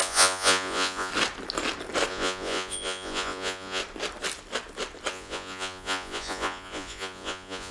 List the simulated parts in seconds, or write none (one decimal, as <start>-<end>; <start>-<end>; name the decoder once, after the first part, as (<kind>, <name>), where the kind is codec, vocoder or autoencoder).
0.0-1.1 (vocoder, Vocos); 2.1-3.8; 5.1-7.7